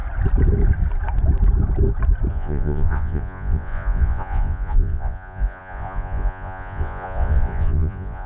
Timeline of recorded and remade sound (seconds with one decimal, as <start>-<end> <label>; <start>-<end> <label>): 0.0-2.3 recorded; 2.3-8.3 remade